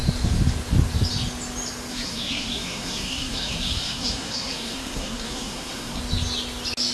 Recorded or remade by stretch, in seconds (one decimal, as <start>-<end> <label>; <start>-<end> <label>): 0.0-1.9 recorded; 1.9-6.0 remade; 6.0-6.9 recorded